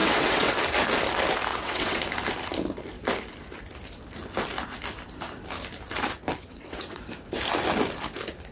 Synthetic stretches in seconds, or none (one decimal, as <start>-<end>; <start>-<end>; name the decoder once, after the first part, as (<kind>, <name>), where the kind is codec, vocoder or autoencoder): 0.0-0.5 (vocoder, WaveNeXt); 1.5-2.0; 6.4-7.0